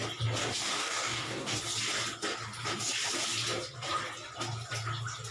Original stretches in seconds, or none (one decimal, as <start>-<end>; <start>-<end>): 0.0-0.4; 1.6-5.3